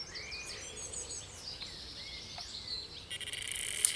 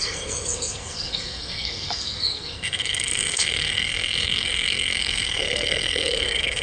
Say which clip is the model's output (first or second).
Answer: second